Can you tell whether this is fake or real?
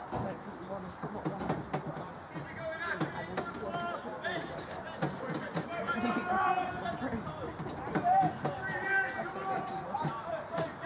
real